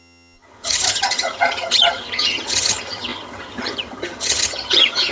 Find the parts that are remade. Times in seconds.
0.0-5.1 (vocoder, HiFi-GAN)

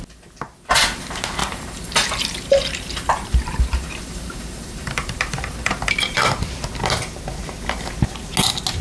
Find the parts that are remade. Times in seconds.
1.4-6.4 (vocoder, BigVGAN v2)

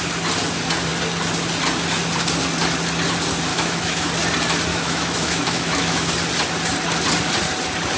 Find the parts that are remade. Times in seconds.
3.5-4.1 (autoencoder, DAC-VAE); 4.7-6.1

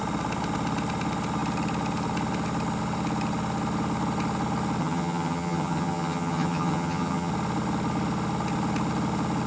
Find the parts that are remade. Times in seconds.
4.8-7.3 (vocoder, HiFi-GAN)

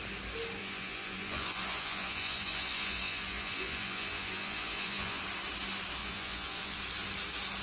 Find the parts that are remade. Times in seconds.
0.6-5.2 (vocoder, Vocos); 6.0-6.8

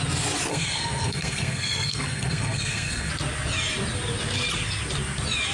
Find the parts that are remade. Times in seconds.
0.5-3.1 (codec, SNAC)

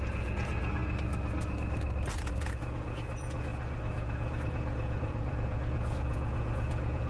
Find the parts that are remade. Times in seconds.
0.0-0.8 (vocoder, Vocos); 2.1-7.1